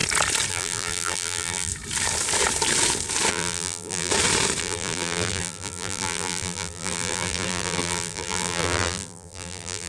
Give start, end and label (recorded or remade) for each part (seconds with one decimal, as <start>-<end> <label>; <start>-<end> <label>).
0.0-0.5 recorded; 0.5-1.7 remade; 1.7-3.3 recorded; 3.3-4.1 remade; 4.1-4.6 recorded; 4.6-9.9 remade